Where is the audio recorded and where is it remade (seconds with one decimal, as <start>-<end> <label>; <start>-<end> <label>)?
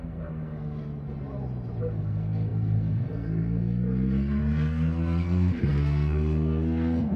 0.0-0.9 remade; 0.9-1.8 recorded; 1.8-7.2 remade